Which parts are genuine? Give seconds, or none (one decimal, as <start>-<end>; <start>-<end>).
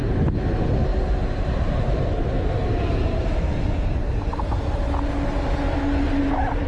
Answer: 0.0-0.9; 4.9-6.7